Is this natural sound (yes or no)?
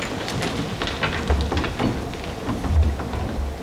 yes